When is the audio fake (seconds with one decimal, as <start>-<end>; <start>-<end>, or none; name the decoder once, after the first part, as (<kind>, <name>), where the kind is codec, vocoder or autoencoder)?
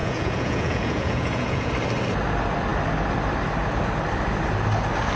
0.0-1.7 (vocoder, Vocos)